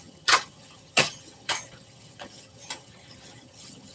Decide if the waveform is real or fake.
fake